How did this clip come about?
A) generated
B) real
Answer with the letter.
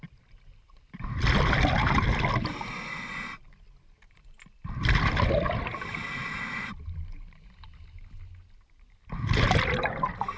B